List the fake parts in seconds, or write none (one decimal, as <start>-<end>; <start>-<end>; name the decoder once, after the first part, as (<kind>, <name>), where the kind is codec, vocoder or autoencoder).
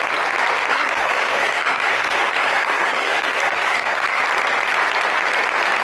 0.7-4.2 (codec, SNAC)